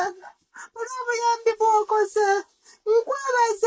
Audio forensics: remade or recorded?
recorded